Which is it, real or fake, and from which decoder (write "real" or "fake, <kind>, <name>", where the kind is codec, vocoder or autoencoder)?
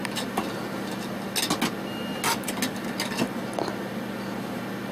real